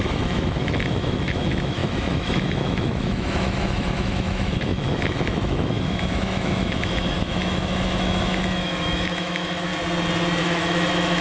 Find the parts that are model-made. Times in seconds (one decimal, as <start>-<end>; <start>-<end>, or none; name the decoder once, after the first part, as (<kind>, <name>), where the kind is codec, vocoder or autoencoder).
0.0-9.7 (autoencoder, DAC-VAE); 10.4-11.2

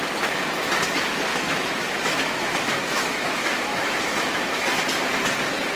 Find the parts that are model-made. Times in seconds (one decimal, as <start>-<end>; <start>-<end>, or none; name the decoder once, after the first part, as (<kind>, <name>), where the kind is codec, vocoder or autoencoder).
1.3-4.8 (autoencoder, DAC-VAE)